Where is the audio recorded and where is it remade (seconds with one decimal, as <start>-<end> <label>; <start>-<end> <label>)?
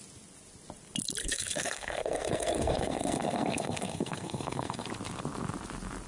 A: 0.0-1.2 recorded; 1.2-4.9 remade; 4.9-6.1 recorded